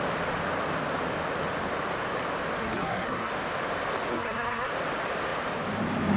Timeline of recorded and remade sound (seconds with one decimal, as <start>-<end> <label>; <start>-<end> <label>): 0.0-2.6 recorded; 2.6-3.3 remade; 3.3-4.1 recorded; 4.1-4.7 remade; 4.7-6.2 recorded